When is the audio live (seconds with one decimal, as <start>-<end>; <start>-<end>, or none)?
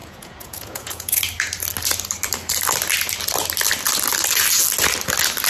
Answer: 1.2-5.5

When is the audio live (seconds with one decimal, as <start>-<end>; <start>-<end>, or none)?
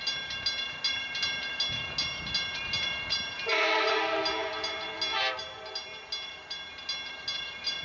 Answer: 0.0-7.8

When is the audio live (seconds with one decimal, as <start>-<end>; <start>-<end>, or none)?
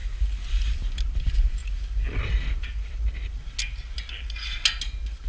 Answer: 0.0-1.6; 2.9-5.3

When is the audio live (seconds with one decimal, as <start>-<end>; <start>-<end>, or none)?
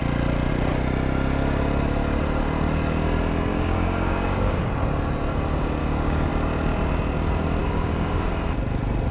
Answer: 0.0-3.5; 4.6-5.8; 6.3-7.6; 8.3-9.1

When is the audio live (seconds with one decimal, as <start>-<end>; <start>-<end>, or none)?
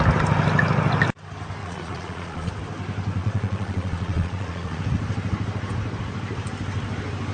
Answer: 0.0-1.6; 2.5-3.2; 4.8-7.3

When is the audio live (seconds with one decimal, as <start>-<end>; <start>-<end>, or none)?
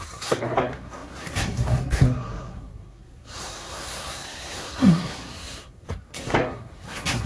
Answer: none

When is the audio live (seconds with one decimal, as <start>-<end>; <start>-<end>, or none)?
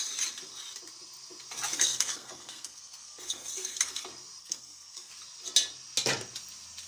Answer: 0.0-1.7; 4.0-4.4; 5.1-6.9